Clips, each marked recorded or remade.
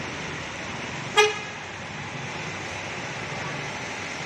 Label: recorded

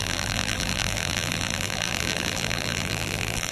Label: remade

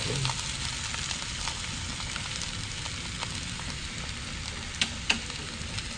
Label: recorded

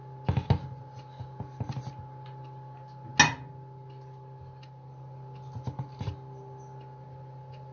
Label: recorded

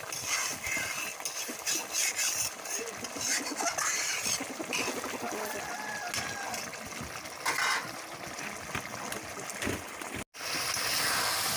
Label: recorded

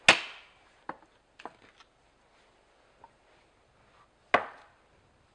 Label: recorded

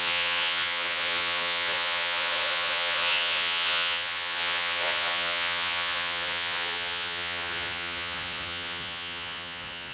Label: remade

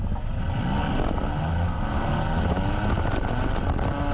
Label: recorded